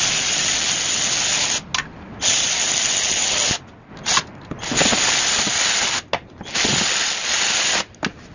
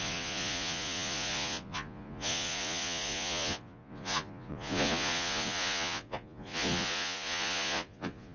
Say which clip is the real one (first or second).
first